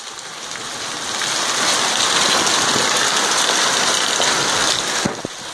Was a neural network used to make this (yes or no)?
no